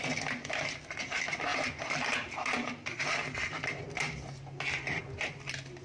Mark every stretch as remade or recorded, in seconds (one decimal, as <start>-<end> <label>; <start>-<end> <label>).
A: 0.0-5.8 recorded